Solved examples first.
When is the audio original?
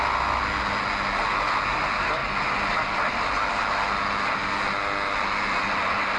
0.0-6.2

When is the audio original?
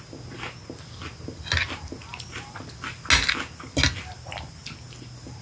0.0-5.4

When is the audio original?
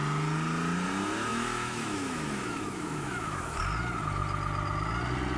0.0-1.3; 3.6-5.4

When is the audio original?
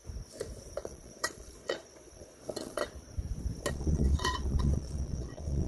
0.0-0.8; 2.8-3.7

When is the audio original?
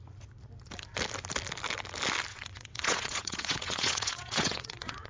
0.0-2.3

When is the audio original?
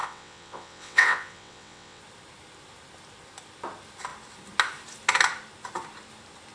2.0-6.5